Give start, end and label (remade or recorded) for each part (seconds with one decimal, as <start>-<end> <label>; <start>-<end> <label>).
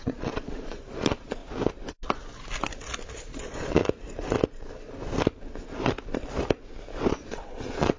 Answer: 0.0-1.4 remade; 1.4-3.2 recorded; 3.2-3.8 remade; 3.8-7.1 recorded; 7.1-8.0 remade